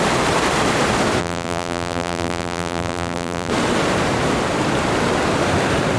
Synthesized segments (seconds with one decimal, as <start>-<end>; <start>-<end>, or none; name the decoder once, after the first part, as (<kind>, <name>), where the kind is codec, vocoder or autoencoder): 1.2-3.5 (vocoder, BigVGAN v2)